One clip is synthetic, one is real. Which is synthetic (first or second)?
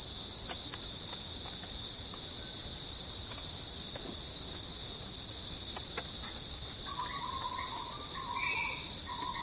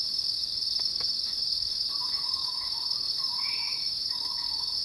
second